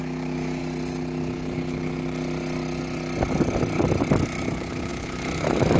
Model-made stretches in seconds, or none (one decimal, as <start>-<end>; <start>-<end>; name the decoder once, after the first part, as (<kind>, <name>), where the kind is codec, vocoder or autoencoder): 0.0-0.6 (autoencoder, DAC-VAE); 4.1-5.8